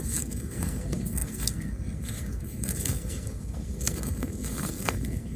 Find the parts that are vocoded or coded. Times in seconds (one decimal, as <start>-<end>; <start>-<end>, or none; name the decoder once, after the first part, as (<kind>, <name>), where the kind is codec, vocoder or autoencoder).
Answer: 0.0-5.4 (codec, SNAC)